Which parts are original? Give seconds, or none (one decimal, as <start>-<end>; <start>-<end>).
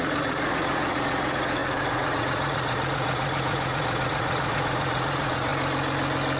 5.5-6.4